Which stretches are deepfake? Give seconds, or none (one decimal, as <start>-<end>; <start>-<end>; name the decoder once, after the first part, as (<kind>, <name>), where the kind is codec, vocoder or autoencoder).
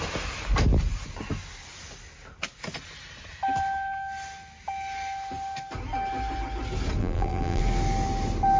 7.0-7.6 (vocoder, BigVGAN v2)